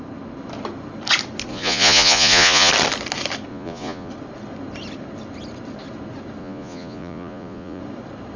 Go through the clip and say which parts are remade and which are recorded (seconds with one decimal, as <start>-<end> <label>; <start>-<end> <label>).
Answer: 0.0-1.5 recorded; 1.5-2.7 remade; 2.7-3.5 recorded; 3.5-4.1 remade; 4.1-6.4 recorded; 6.4-7.8 remade; 7.8-8.4 recorded